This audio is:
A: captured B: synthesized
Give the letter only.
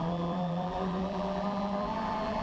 B